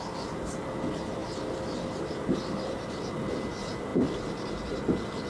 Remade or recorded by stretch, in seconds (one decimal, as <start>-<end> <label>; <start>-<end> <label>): 0.0-1.2 recorded; 1.2-2.4 remade; 2.4-3.9 recorded; 3.9-4.8 remade; 4.8-5.3 recorded